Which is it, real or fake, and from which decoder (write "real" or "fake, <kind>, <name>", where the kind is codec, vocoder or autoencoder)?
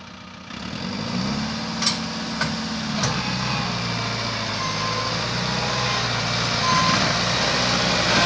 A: real